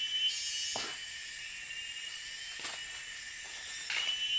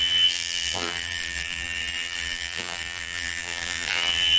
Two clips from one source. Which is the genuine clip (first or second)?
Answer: first